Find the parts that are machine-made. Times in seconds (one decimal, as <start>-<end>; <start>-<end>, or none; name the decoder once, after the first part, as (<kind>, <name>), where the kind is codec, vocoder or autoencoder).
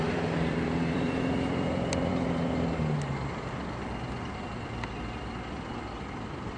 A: 0.0-2.1 (vocoder, BigVGAN v2); 6.1-6.6